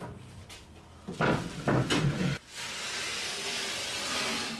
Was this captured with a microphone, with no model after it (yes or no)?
yes